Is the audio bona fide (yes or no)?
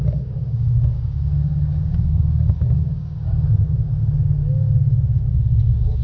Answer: no